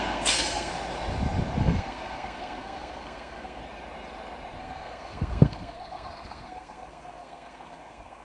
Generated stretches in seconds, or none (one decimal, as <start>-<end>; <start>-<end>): 0.0-0.7; 1.6-3.6; 4.6-8.2